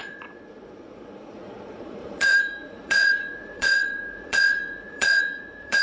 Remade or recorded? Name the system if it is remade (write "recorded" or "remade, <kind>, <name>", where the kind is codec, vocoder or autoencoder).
remade, vocoder, Vocos